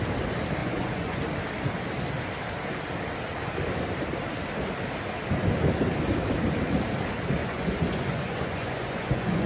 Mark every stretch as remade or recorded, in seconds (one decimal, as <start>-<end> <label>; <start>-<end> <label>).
0.0-0.6 recorded; 0.6-1.2 remade; 1.2-7.4 recorded; 7.4-9.5 remade